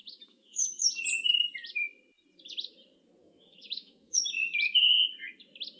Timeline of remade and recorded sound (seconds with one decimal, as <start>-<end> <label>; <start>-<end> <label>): 0.0-0.9 remade; 0.9-3.2 recorded; 3.2-4.4 remade; 4.4-5.8 recorded